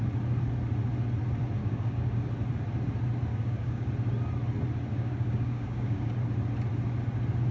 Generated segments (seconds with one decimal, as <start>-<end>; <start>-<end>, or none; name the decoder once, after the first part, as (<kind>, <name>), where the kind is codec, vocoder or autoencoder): 1.6-2.2 (codec, DAC); 3.3-3.9; 4.9-6.1